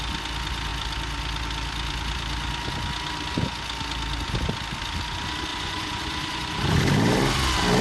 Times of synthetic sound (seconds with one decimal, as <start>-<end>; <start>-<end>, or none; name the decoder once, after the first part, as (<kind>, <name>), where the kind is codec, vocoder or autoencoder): 5.5-6.8 (vocoder, Vocos)